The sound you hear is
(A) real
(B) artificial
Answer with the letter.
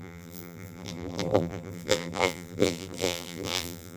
B